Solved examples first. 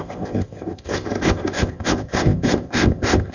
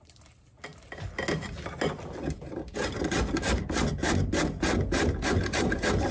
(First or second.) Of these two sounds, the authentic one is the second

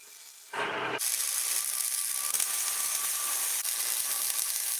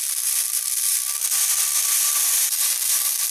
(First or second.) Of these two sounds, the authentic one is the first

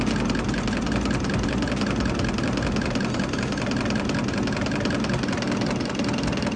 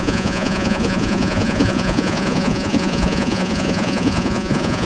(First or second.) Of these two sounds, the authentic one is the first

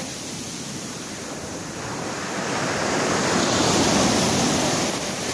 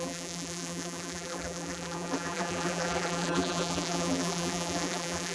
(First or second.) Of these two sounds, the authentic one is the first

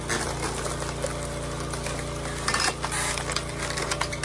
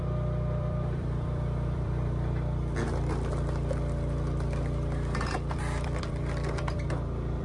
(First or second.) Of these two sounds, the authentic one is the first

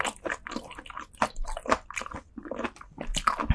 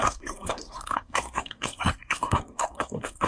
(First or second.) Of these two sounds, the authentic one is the first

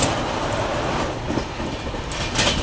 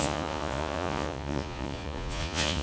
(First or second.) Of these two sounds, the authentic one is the first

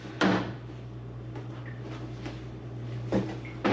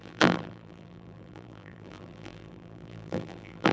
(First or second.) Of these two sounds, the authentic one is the first